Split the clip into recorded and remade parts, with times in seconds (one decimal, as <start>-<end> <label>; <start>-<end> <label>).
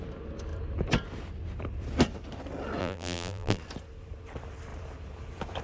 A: 0.0-2.8 recorded; 2.8-3.6 remade; 3.6-5.6 recorded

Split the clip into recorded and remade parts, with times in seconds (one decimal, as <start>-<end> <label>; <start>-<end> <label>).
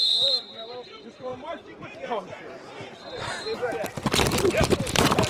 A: 0.0-5.3 remade